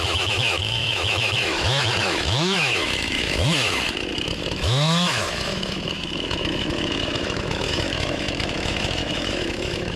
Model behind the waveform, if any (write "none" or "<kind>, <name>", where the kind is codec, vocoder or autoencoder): autoencoder, DAC-VAE